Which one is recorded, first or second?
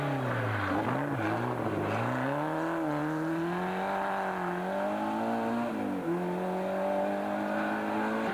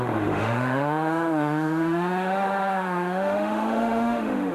first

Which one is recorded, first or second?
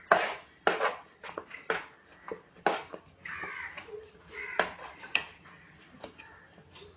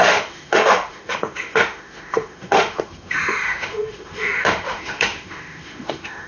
first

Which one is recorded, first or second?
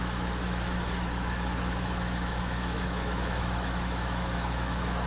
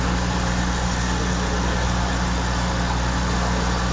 second